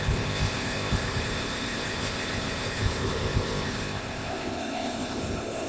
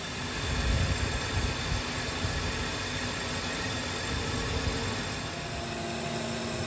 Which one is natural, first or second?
second